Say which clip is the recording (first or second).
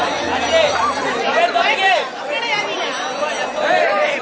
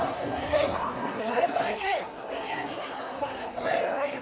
first